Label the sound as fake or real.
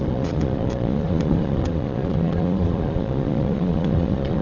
fake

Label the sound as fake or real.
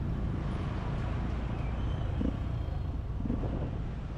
real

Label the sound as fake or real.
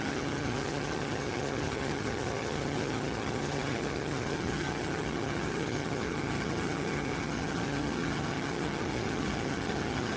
fake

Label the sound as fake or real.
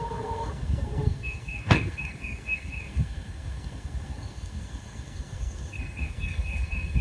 fake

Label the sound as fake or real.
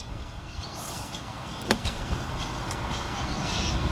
fake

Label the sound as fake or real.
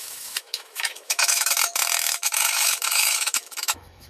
fake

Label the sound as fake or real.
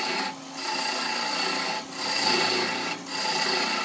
real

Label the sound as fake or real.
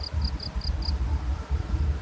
real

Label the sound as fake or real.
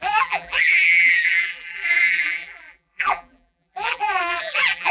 fake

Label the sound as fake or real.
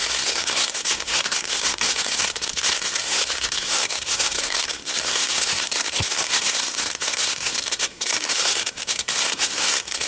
fake